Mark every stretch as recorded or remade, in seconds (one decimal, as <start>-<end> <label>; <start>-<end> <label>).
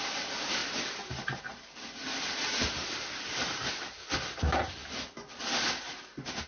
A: 0.0-6.5 recorded